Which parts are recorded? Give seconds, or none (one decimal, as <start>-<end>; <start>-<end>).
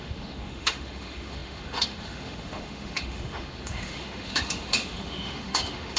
none